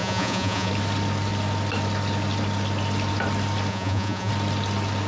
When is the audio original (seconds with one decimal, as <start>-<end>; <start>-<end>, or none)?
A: 0.7-3.7; 4.3-5.1